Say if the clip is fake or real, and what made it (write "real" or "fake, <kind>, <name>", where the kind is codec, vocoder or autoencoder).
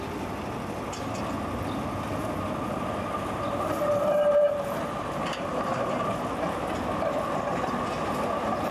real